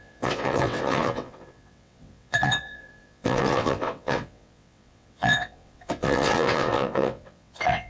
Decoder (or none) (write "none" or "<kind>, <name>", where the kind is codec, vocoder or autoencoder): vocoder, WaveNeXt